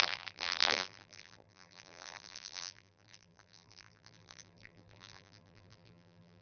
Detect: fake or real fake